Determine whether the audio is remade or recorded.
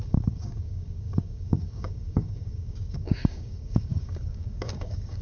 remade